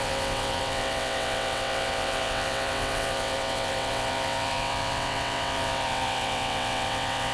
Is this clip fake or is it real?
fake